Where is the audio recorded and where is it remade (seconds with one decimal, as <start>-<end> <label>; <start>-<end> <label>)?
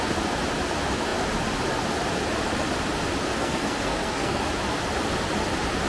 0.0-3.4 recorded; 3.4-4.4 remade; 4.4-5.9 recorded